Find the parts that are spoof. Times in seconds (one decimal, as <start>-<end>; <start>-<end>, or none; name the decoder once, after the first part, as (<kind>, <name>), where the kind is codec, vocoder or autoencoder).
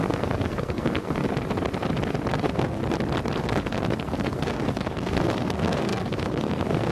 0.0-1.2 (codec, SNAC); 2.3-2.8; 3.4-6.9